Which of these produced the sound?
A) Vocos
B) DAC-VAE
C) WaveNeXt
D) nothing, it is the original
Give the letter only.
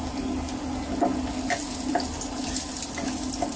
D